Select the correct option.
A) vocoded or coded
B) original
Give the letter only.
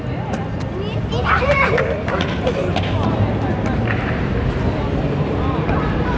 B